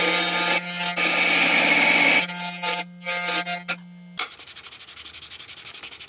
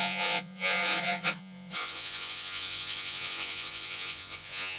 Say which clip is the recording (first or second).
first